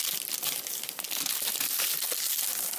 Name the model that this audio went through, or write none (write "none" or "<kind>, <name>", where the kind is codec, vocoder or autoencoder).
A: none